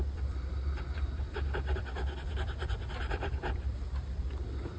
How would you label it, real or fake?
fake